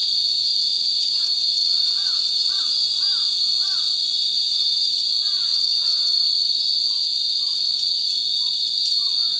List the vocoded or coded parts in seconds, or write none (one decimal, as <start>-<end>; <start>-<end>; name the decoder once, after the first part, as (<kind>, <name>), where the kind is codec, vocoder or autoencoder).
0.0-2.6 (vocoder, Vocos); 4.4-5.1